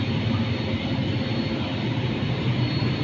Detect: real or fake real